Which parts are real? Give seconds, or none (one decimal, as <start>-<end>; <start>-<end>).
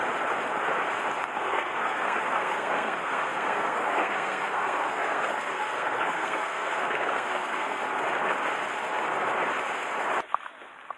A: 0.0-1.2; 7.8-11.0